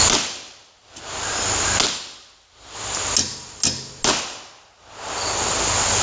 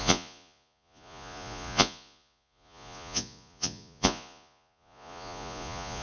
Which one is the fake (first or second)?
second